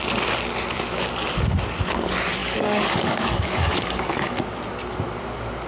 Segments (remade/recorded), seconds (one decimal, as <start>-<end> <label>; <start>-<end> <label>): 0.0-2.4 recorded; 2.4-4.4 remade; 4.4-5.7 recorded